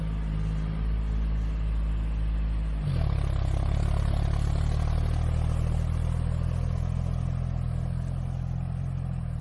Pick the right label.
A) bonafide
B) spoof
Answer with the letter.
A